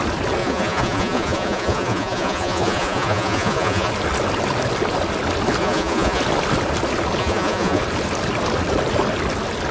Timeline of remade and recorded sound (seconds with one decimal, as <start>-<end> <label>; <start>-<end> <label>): 0.0-0.4 recorded; 0.4-3.9 remade; 3.9-5.6 recorded; 5.6-6.2 remade; 6.2-7.2 recorded; 7.2-7.8 remade; 7.8-9.7 recorded